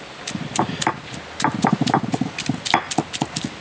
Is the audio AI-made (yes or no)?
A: no